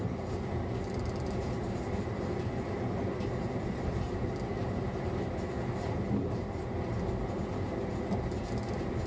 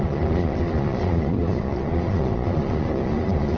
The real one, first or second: first